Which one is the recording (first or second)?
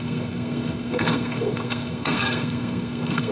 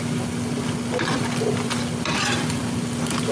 second